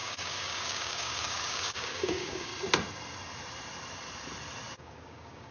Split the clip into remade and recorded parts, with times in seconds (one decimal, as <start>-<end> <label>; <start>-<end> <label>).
0.0-2.5 remade; 2.5-4.8 recorded; 4.8-5.5 remade